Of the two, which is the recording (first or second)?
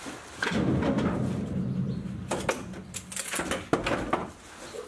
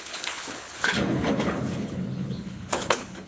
first